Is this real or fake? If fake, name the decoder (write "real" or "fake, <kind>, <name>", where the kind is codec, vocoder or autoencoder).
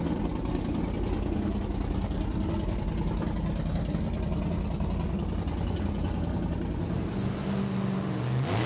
real